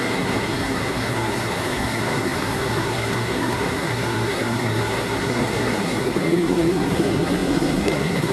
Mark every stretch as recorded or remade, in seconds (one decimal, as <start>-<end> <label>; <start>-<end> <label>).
0.0-8.3 remade